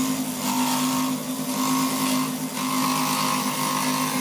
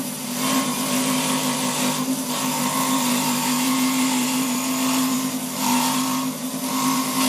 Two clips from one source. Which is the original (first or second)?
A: first